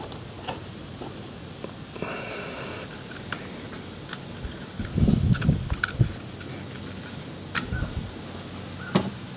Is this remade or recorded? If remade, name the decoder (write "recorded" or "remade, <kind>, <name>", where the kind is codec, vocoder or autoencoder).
recorded